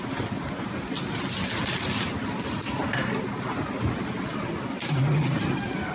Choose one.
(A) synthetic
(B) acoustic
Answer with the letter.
B